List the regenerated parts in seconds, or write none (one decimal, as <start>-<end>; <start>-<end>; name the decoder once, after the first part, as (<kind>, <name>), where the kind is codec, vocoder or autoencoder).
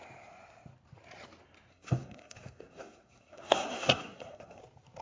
1.7-4.6 (codec, SNAC)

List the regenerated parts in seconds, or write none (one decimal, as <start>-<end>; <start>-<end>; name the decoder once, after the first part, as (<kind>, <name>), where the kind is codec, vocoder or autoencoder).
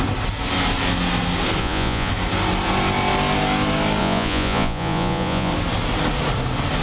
1.6-2.1 (vocoder, Vocos); 4.0-5.5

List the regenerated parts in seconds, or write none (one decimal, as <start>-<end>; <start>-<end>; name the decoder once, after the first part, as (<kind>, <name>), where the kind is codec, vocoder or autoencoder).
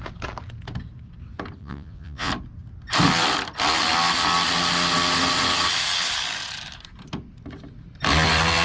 1.6-2.3 (vocoder, Vocos)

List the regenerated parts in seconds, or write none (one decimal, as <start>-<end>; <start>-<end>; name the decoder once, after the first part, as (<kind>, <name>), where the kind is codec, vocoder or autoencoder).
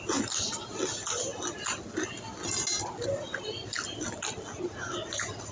none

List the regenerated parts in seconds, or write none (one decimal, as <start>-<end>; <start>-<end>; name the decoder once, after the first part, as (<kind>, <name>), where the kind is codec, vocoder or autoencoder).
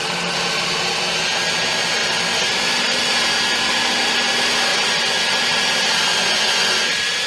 4.7-5.2 (vocoder, Vocos); 6.1-6.8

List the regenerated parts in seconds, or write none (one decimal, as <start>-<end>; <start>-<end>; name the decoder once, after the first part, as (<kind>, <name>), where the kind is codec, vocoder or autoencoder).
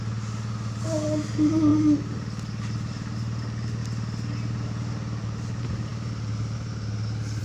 none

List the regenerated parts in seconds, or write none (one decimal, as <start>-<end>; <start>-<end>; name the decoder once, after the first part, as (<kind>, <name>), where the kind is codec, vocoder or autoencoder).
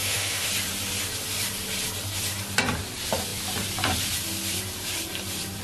0.0-0.5 (autoencoder, DAC-VAE)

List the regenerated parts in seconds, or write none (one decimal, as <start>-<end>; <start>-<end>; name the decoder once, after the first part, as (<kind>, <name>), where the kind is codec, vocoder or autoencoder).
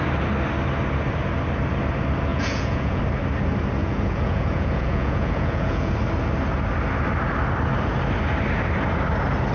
2.3-3.0 (vocoder, Vocos); 3.8-5.9